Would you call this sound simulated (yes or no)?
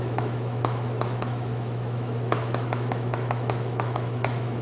yes